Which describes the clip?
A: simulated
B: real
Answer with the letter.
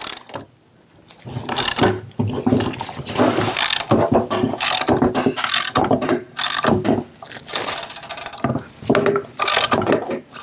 B